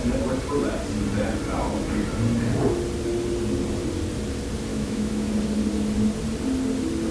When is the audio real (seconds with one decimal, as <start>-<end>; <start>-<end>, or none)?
0.0-4.7; 5.3-7.1